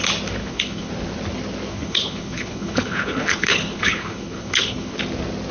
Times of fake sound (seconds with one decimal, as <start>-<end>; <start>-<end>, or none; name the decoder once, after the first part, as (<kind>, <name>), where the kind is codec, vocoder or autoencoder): 0.4-0.9 (codec, HILCodec); 1.7-5.0